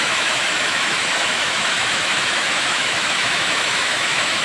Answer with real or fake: fake